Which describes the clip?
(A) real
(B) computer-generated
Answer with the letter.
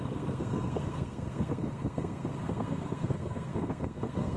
B